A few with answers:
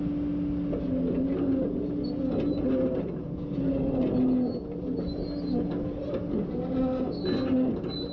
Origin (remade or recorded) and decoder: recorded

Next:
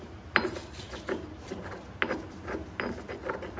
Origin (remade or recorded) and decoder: recorded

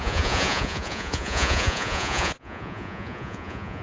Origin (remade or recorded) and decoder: remade, vocoder, Vocos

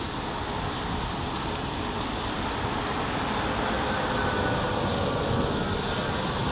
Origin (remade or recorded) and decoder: recorded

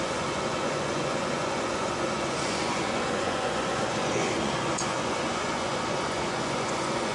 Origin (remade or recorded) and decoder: remade, vocoder, Vocos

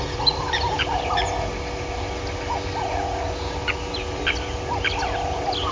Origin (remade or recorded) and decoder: recorded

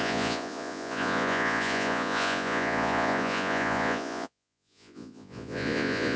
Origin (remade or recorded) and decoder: remade, vocoder, Vocos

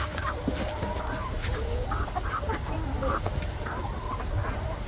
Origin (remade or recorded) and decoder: recorded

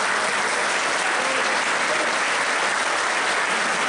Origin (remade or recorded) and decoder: recorded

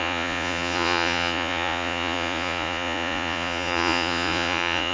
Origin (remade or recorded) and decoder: remade, vocoder, Vocos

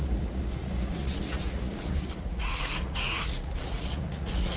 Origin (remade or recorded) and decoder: remade, vocoder, Vocos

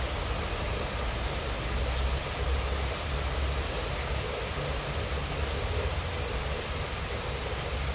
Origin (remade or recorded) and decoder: recorded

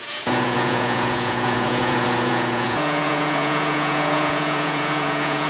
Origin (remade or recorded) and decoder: remade, vocoder, Vocos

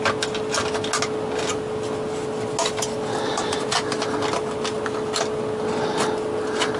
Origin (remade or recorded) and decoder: recorded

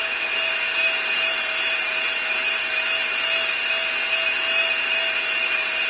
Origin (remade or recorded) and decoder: recorded